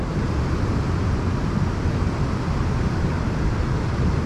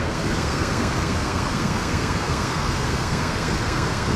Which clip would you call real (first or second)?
first